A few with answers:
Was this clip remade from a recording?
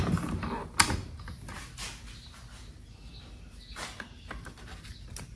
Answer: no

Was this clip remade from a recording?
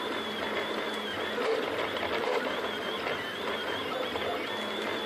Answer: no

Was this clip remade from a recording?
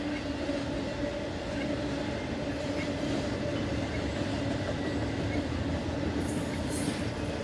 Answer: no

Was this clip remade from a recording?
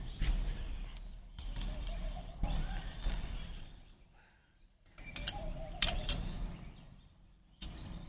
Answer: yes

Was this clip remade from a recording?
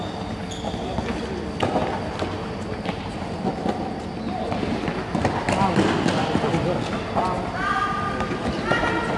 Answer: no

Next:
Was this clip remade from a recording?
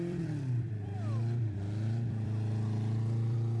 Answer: yes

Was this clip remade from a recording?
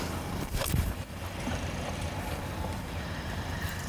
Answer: yes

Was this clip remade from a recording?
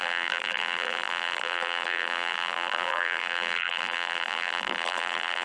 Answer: yes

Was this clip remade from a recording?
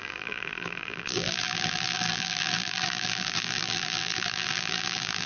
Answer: yes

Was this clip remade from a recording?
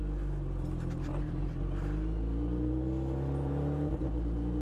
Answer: no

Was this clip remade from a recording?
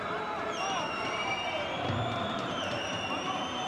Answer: yes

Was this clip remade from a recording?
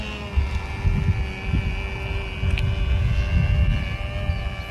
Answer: no